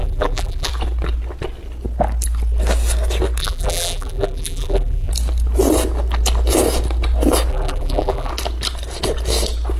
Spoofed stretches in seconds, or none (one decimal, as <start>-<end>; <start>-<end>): 0.0-0.7; 3.4-5.1; 7.5-8.3